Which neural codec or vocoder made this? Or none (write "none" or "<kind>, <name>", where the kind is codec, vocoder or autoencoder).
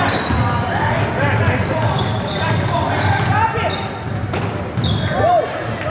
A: none